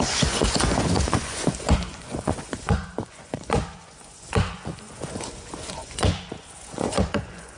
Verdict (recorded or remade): remade